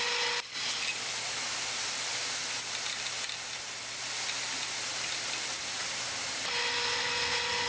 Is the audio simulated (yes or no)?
no